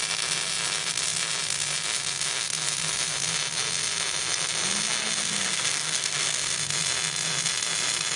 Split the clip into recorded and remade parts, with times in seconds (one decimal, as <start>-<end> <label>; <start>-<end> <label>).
0.0-5.2 recorded; 5.2-6.6 remade; 6.6-8.2 recorded